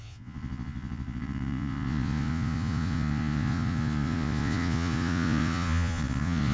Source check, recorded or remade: remade